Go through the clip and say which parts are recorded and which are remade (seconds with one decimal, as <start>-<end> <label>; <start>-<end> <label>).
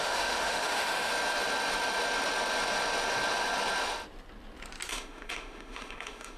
0.0-1.1 remade; 1.1-4.9 recorded; 4.9-6.4 remade